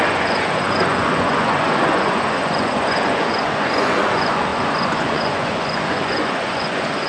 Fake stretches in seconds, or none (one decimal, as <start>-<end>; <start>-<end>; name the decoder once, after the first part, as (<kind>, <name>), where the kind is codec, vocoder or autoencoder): 0.0-7.1 (vocoder, Vocos)